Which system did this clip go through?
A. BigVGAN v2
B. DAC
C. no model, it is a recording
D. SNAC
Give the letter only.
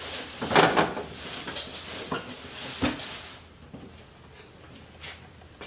C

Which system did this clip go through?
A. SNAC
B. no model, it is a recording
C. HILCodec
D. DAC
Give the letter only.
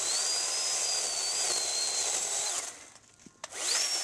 B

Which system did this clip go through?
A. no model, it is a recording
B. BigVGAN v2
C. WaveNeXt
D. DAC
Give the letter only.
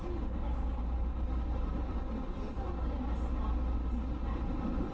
A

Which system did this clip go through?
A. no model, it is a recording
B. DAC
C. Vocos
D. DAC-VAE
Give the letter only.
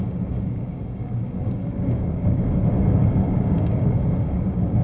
B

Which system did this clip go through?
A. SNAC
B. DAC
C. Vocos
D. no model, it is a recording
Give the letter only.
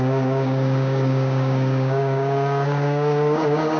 B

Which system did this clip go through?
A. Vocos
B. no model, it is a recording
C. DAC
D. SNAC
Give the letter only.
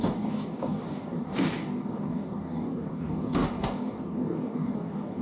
C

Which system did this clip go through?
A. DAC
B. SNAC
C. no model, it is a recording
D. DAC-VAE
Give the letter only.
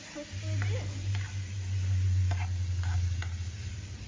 C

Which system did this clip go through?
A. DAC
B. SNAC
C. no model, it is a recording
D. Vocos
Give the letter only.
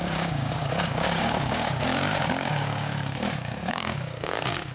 A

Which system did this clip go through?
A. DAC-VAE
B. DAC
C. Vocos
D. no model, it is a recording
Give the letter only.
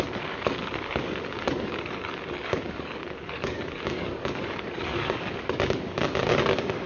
B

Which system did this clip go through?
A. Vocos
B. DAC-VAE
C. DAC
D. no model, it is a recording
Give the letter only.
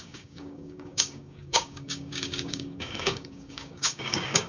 C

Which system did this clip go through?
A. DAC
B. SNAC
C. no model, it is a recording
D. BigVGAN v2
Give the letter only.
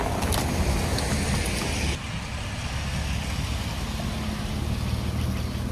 C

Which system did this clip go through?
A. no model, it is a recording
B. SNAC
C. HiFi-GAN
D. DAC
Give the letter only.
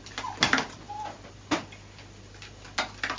A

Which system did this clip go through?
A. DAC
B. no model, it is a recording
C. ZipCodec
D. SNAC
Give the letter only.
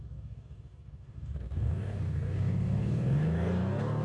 A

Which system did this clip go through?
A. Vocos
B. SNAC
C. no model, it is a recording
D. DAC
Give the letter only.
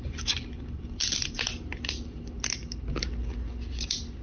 C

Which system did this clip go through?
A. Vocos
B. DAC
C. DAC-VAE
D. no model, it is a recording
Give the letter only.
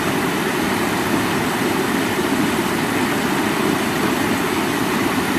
D